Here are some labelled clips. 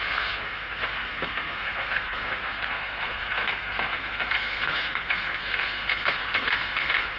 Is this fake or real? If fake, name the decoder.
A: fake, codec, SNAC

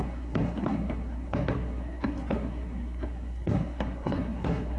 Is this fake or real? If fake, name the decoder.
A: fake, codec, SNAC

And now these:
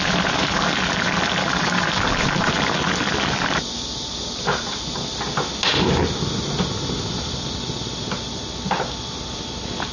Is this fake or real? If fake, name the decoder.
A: real